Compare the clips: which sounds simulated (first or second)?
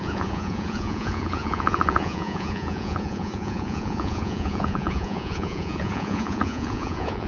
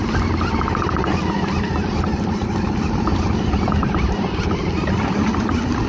first